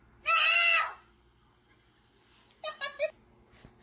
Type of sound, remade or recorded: recorded